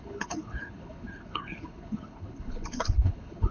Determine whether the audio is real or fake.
fake